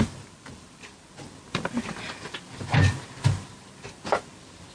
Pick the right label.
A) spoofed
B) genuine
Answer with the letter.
B